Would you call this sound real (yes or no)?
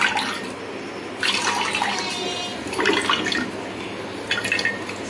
yes